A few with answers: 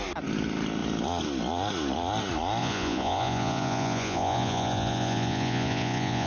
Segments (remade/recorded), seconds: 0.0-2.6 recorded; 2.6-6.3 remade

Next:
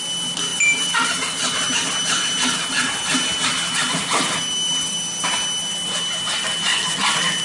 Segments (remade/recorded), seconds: 0.0-0.5 recorded; 0.5-4.9 remade; 4.9-7.4 recorded

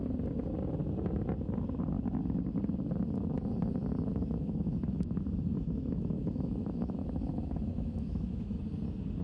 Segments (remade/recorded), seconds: 0.0-4.1 recorded; 4.1-8.6 remade; 8.6-9.2 recorded

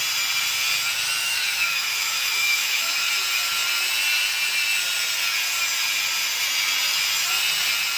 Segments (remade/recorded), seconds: 0.0-1.2 recorded; 1.2-3.1 remade; 3.1-8.0 recorded

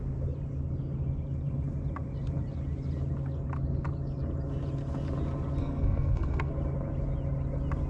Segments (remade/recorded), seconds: 0.0-5.6 recorded; 5.6-6.5 remade; 6.5-7.9 recorded